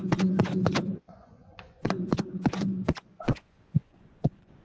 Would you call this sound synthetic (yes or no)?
yes